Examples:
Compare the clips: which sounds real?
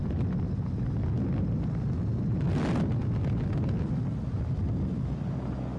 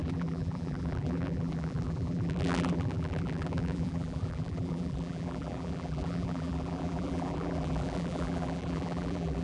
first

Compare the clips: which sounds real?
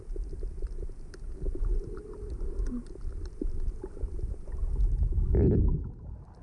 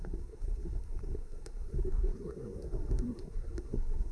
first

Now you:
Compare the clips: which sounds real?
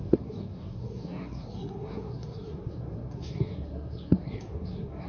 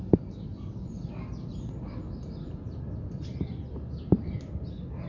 second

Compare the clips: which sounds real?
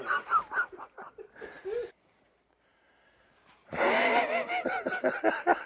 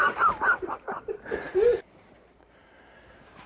first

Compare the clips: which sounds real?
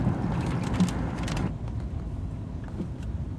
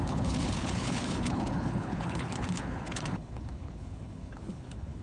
first